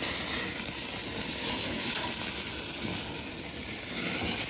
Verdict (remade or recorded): recorded